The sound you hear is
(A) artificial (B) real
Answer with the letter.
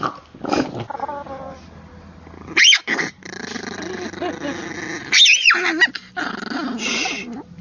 B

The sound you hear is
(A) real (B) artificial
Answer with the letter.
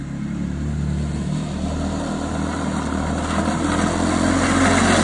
A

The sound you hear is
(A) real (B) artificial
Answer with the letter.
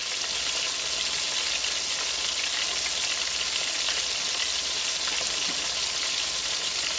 A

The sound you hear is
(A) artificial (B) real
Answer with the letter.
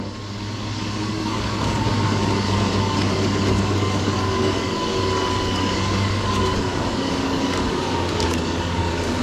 A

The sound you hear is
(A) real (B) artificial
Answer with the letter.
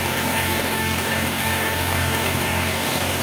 B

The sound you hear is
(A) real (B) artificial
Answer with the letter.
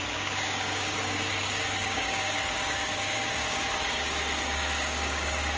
B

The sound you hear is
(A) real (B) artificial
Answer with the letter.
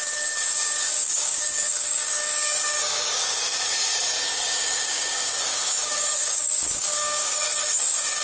B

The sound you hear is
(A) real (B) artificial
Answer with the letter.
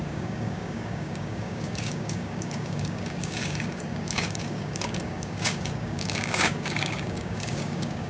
B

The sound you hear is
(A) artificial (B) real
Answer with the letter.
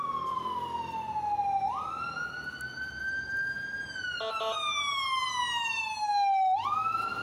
B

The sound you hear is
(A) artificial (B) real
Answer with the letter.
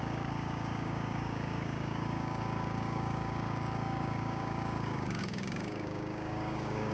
A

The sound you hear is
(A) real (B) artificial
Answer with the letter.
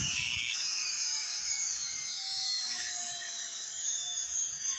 B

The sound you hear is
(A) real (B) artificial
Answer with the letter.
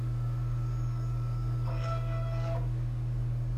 B